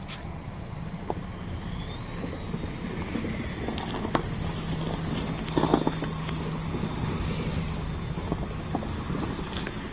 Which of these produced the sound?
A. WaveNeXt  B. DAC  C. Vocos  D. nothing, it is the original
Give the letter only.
D